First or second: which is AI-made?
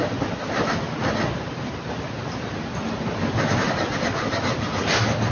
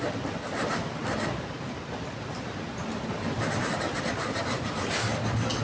second